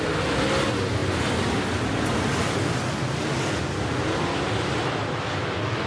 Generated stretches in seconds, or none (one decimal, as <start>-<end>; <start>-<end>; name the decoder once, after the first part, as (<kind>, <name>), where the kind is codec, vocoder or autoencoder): none

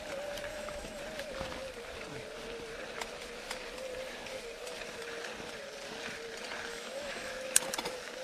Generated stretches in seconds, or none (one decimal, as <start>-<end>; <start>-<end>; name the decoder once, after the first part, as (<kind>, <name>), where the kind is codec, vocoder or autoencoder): 0.5-1.0 (autoencoder, DAC-VAE); 6.7-7.3